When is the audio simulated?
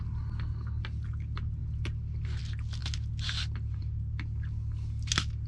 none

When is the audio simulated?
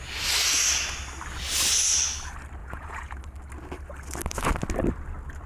2.6-3.2 (vocoder, Vocos)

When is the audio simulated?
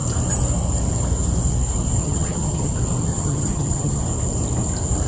2.0-2.7 (vocoder, HiFi-GAN); 3.1-4.0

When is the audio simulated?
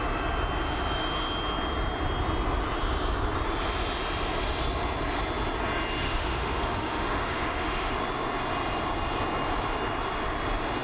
6.0-7.9 (autoencoder, DAC-VAE)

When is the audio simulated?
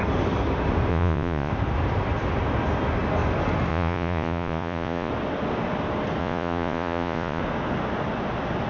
0.9-1.5 (vocoder, Vocos); 3.7-5.1; 6.2-7.4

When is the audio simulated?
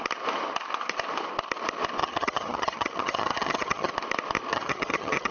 2.0-3.9 (vocoder, HiFi-GAN); 4.5-5.3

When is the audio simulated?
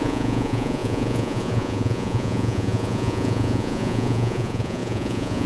0.0-5.5 (vocoder, Vocos)